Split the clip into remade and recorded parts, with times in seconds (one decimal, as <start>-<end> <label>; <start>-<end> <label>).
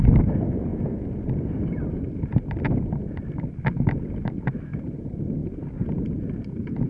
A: 0.0-5.4 recorded; 5.4-6.2 remade; 6.2-6.9 recorded